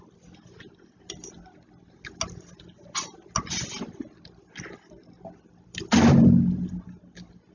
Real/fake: real